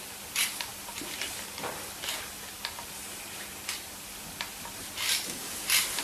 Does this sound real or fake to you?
real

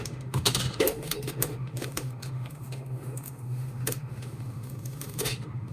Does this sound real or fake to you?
fake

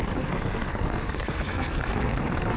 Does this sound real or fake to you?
fake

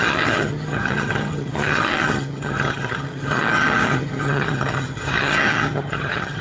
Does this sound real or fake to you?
fake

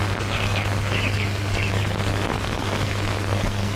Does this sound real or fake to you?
fake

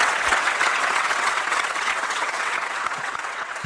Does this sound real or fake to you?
fake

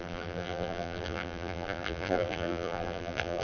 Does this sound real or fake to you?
fake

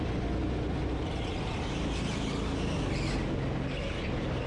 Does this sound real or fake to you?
real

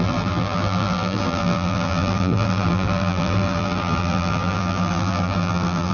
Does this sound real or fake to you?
fake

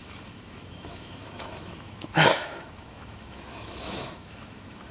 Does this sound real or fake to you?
fake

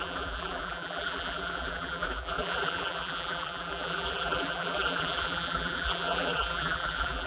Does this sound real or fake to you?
fake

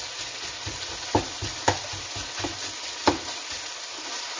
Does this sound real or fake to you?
real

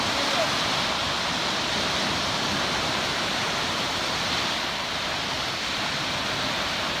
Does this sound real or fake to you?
real